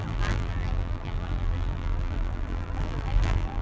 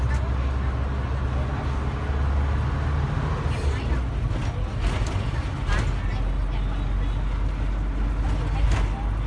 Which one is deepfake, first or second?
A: first